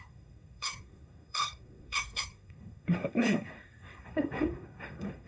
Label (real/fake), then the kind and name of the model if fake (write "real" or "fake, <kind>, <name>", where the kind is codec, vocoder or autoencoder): fake, codec, SNAC